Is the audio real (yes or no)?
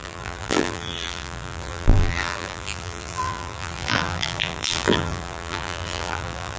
no